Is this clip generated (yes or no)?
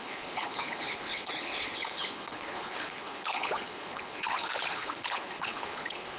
yes